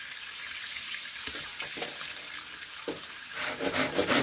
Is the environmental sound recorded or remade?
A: recorded